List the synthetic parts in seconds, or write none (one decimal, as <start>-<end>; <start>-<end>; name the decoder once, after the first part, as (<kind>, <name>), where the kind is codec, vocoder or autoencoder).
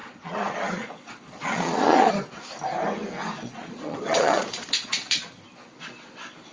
0.0-2.1 (vocoder, Vocos); 3.4-5.3